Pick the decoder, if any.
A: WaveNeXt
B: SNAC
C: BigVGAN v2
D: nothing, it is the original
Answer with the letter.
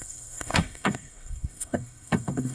B